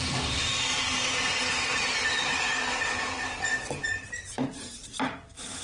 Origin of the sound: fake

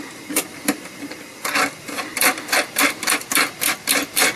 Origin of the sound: fake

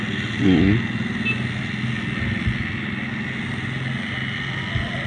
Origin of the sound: real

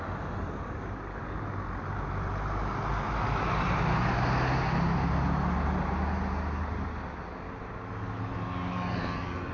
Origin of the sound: fake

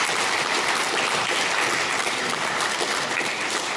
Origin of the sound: fake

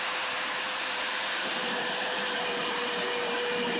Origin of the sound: fake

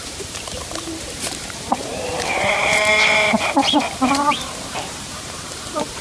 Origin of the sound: fake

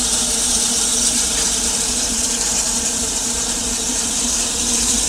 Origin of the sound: fake